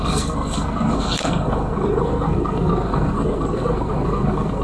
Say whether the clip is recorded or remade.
remade